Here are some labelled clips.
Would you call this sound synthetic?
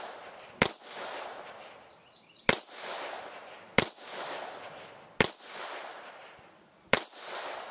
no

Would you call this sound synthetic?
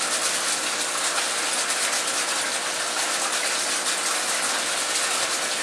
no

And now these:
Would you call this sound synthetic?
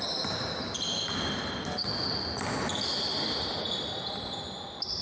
no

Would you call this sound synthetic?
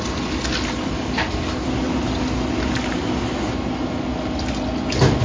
no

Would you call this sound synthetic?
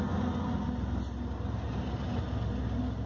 no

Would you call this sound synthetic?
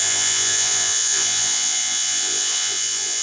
yes